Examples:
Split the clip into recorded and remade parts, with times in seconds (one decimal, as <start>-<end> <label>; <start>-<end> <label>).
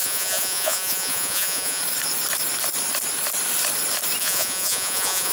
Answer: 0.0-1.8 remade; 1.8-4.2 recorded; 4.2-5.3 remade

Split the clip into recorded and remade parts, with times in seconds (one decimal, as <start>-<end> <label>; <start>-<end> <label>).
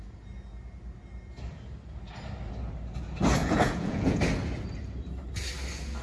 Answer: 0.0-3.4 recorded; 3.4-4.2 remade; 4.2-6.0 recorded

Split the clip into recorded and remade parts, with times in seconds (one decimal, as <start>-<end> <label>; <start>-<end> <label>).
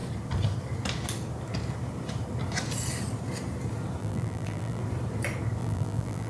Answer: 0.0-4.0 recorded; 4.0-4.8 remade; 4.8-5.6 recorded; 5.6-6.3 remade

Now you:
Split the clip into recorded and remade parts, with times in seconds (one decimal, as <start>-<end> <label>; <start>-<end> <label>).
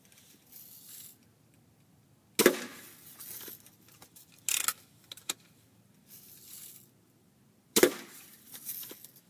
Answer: 0.0-7.6 recorded; 7.6-8.7 remade; 8.7-9.3 recorded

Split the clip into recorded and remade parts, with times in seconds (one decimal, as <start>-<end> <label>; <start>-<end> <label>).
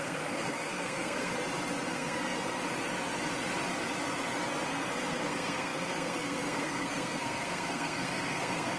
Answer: 0.0-1.3 remade; 1.3-1.9 recorded; 1.9-2.6 remade; 2.6-4.7 recorded; 4.7-8.8 remade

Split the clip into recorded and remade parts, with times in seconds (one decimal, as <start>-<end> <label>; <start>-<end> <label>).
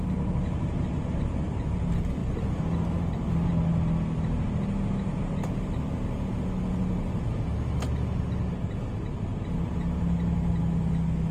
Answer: 0.0-11.3 recorded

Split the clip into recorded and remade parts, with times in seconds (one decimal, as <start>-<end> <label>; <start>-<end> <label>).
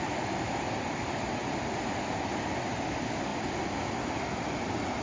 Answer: 0.0-5.0 recorded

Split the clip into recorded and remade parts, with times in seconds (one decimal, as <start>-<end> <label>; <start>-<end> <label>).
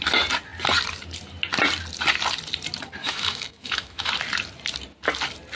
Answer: 0.0-3.0 recorded; 3.0-4.1 remade; 4.1-5.6 recorded